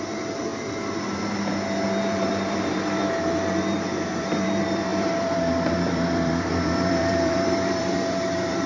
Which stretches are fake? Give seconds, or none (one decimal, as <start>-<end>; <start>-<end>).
0.0-0.5; 2.0-3.0; 4.2-8.7